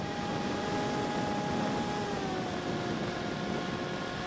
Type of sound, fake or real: real